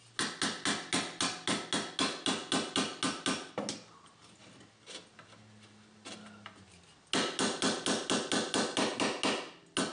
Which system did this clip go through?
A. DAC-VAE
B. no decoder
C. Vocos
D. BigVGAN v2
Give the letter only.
B